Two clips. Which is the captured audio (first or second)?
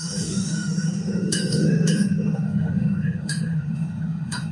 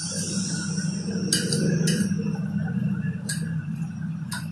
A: second